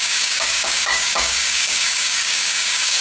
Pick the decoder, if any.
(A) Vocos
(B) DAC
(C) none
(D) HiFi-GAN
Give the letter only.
B